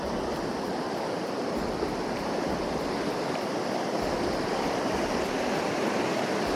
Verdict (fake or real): real